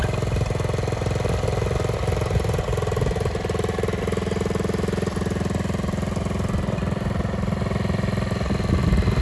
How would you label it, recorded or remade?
recorded